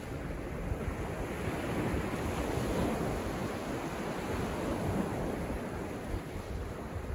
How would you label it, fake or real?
real